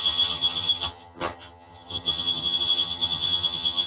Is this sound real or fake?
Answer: fake